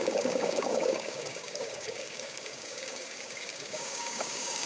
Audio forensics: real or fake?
fake